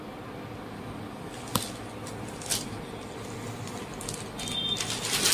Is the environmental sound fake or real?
real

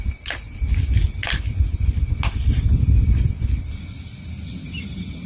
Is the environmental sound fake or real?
real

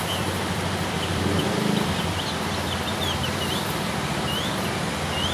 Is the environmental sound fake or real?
fake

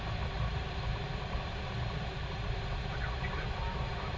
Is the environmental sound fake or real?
fake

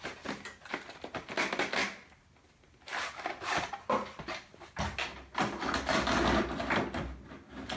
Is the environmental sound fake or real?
real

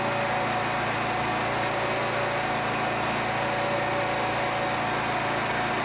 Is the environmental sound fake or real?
real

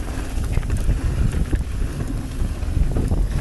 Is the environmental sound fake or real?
real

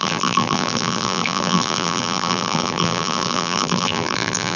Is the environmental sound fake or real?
fake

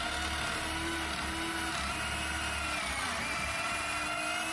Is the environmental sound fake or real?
real